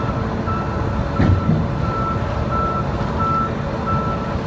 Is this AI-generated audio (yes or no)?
no